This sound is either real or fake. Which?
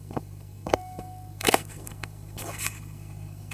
fake